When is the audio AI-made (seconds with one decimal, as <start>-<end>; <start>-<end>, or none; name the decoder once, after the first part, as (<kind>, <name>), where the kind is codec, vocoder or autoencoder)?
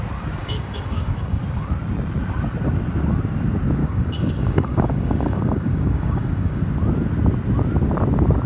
0.4-1.4 (codec, DAC); 3.8-6.6